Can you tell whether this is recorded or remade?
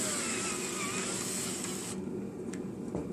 recorded